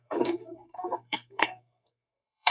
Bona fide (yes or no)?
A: no